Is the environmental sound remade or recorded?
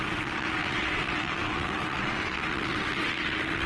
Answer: remade